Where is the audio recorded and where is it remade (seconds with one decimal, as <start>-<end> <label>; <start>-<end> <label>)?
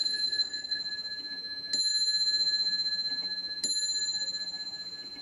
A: 0.0-0.8 remade; 0.8-5.2 recorded